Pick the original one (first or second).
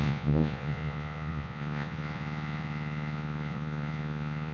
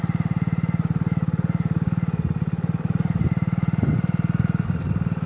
second